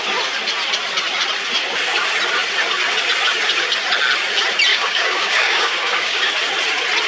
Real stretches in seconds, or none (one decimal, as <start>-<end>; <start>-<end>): 0.0-4.7; 6.3-7.1